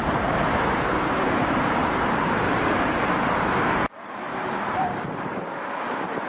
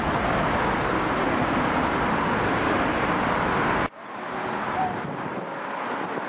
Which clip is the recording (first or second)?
second